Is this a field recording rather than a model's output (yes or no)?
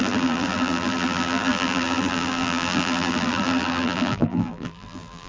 no